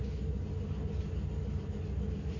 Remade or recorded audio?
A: recorded